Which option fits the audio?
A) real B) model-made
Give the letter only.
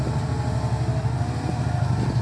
A